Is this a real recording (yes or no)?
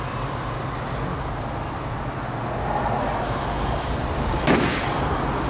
yes